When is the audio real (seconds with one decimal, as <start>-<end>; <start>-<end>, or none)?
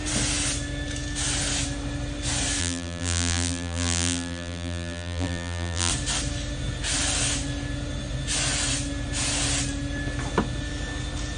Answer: 0.0-2.6; 5.9-11.4